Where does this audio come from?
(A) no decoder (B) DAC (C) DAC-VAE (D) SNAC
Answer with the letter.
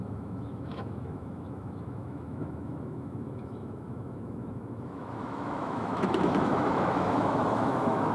C